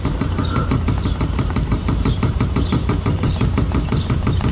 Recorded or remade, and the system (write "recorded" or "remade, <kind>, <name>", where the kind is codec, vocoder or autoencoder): remade, vocoder, BigVGAN v2